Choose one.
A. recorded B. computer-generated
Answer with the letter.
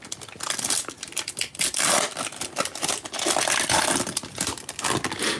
A